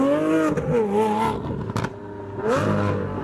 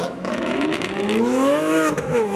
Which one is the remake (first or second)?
second